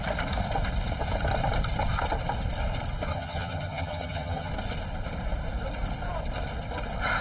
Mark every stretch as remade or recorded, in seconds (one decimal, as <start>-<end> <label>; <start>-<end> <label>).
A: 0.0-3.1 recorded; 3.1-4.5 remade; 4.5-7.2 recorded